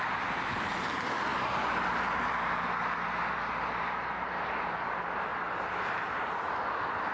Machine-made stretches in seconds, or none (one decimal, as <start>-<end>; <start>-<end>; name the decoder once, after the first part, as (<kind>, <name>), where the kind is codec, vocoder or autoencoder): none